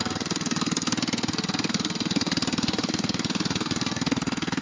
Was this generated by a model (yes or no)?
yes